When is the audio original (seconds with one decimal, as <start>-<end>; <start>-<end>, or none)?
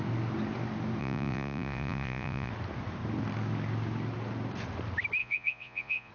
0.0-1.0; 2.5-5.2